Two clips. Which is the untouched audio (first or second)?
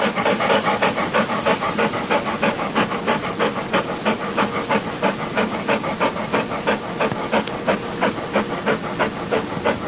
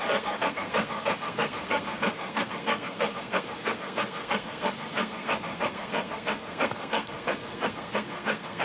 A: first